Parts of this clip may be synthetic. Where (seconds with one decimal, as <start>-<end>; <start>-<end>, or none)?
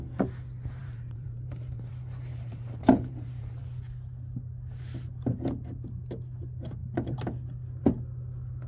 0.8-1.9; 2.3-3.6